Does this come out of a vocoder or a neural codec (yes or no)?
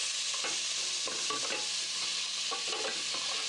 no